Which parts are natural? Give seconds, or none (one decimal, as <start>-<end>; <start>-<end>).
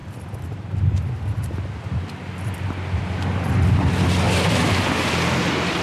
0.0-5.8